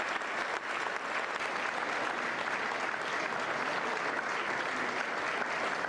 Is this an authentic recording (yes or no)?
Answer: yes